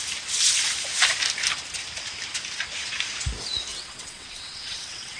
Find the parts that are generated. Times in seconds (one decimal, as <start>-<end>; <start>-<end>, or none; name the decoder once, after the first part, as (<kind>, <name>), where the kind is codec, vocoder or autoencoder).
3.7-5.2 (vocoder, WaveNeXt)